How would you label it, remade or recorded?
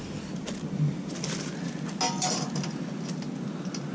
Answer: recorded